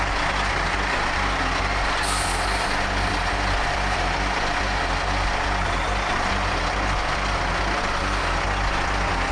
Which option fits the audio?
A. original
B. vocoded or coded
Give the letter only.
A